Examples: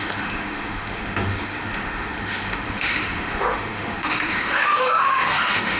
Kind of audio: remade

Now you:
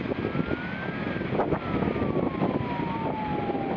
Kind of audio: recorded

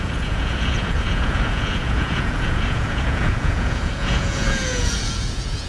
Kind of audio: remade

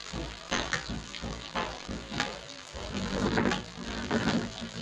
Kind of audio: remade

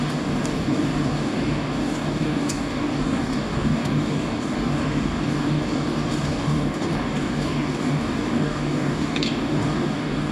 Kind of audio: remade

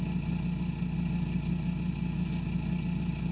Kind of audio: recorded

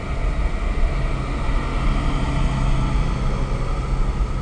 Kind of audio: recorded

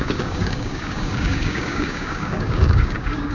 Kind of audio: remade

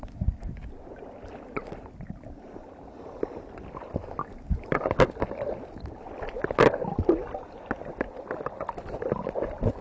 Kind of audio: recorded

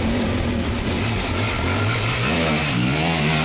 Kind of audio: recorded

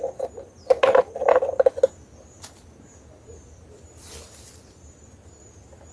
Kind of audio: recorded